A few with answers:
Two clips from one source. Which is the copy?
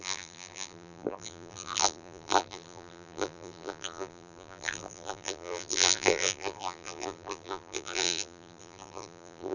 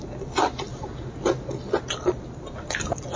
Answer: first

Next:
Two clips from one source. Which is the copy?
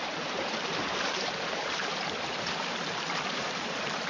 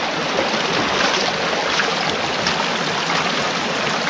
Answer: first